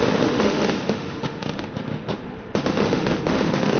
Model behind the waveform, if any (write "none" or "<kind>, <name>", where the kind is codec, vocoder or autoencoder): autoencoder, DAC-VAE